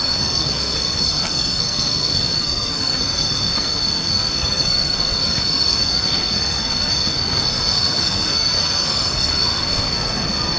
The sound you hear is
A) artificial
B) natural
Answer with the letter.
A